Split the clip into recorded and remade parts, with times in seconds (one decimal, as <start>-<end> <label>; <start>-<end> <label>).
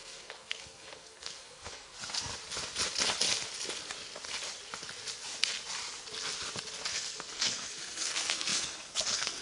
0.0-2.3 remade; 2.3-6.9 recorded; 6.9-9.4 remade